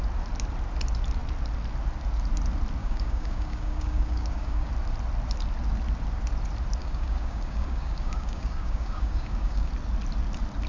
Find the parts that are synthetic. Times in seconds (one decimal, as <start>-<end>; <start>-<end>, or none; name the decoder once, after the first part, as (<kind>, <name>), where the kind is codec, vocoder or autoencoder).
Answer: 2.8-4.7 (codec, DAC); 6.8-9.7